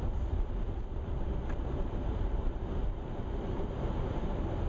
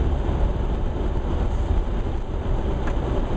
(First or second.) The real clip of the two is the second